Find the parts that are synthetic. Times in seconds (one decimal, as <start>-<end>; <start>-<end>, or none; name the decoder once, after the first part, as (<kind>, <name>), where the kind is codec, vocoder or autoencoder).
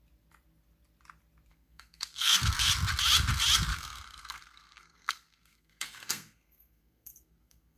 1.5-2.7 (codec, SNAC); 3.7-7.8